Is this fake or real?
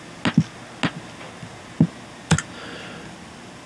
real